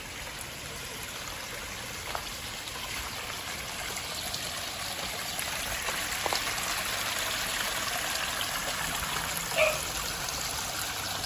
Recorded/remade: recorded